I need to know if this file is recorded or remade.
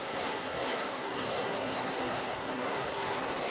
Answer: remade